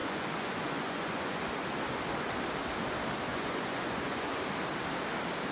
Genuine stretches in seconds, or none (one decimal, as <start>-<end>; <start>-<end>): 1.4-3.3; 4.4-5.5